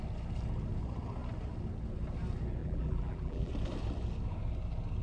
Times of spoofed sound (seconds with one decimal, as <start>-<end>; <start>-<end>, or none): 2.6-3.5